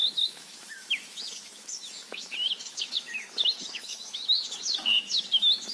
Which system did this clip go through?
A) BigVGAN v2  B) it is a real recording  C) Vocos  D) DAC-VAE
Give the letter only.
D